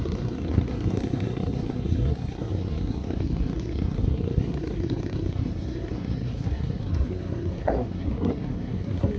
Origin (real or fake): fake